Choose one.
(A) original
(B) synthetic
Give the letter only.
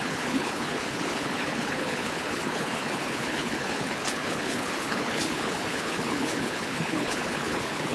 B